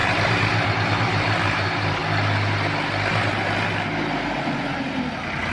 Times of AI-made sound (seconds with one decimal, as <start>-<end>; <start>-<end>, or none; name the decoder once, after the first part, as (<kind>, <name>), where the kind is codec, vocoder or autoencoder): 0.0-2.0 (vocoder, BigVGAN v2)